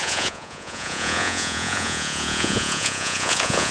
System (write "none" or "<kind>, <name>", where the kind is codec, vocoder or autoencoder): vocoder, Vocos